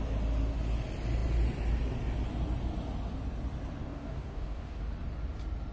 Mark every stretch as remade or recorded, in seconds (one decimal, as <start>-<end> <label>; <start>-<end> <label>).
0.0-3.8 recorded; 3.8-4.8 remade; 4.8-5.7 recorded